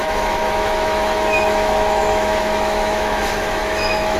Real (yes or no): no